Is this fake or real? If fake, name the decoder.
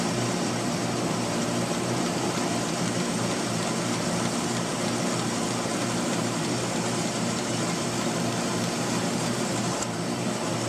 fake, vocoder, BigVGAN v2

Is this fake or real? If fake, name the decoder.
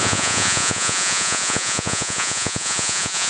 fake, vocoder, Vocos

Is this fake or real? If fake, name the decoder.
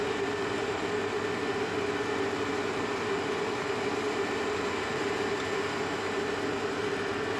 real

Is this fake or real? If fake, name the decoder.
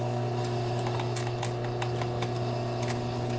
real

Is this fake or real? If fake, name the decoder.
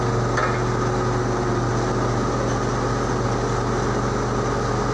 real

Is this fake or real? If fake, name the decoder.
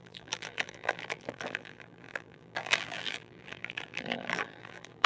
fake, vocoder, BigVGAN v2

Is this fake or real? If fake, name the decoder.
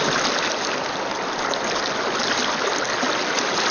real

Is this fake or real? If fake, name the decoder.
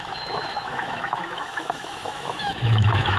fake, autoencoder, DAC-VAE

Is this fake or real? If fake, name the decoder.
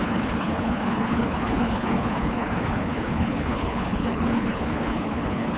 fake, codec, HILCodec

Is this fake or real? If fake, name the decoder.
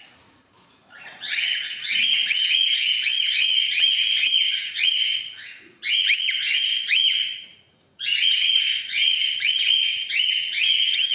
fake, vocoder, Vocos